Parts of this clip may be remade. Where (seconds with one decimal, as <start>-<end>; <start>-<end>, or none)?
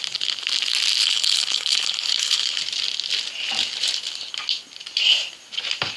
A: 1.0-2.6